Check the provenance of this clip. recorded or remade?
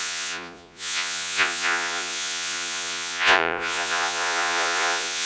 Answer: remade